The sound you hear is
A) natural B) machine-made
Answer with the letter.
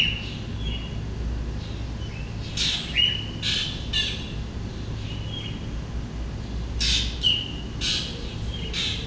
A